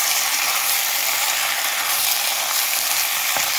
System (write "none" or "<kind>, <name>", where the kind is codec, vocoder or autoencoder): vocoder, BigVGAN v2